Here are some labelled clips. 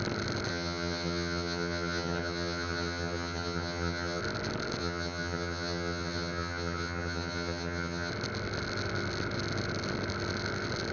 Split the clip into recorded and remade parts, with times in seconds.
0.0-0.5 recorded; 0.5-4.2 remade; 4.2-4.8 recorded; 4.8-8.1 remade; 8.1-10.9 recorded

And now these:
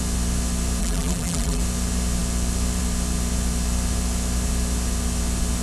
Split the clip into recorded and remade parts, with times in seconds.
0.0-0.8 recorded; 0.8-1.6 remade; 1.6-5.6 recorded

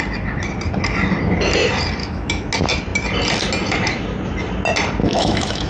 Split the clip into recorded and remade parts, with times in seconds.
0.0-2.0 recorded; 2.0-2.5 remade; 2.5-5.0 recorded; 5.0-5.7 remade

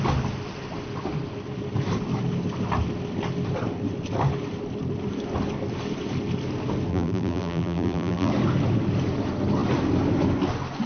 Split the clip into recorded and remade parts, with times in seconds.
0.0-6.9 recorded; 6.9-8.3 remade; 8.3-10.9 recorded